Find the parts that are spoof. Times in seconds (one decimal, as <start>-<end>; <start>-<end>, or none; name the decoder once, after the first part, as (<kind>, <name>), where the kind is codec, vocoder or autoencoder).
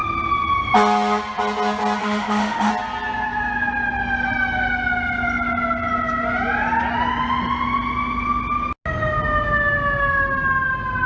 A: 2.0-2.7 (autoencoder, DAC-VAE)